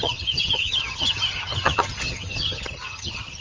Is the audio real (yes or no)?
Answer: no